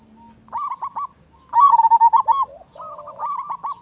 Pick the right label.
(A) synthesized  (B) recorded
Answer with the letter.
B